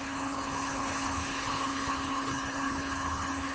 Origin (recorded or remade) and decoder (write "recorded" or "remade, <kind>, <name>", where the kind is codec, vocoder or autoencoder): remade, codec, HILCodec